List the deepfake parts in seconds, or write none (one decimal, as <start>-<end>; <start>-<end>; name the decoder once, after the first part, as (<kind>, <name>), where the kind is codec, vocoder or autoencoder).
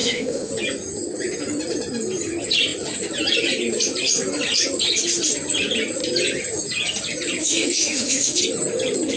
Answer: 0.0-0.5 (autoencoder, DAC-VAE); 7.4-8.4